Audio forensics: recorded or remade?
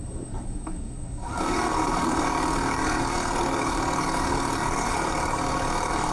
remade